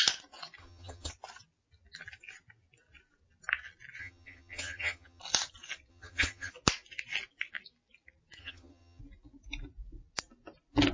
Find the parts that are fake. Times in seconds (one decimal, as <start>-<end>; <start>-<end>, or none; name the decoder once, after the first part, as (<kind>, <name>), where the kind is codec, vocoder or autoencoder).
0.6-1.1 (vocoder, HiFi-GAN); 4.0-5.2; 5.9-6.5; 8.4-9.0